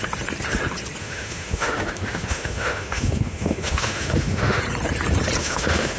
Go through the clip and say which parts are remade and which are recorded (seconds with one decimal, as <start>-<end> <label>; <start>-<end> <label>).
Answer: 0.0-1.0 recorded; 1.0-4.6 remade; 4.6-5.4 recorded; 5.4-6.0 remade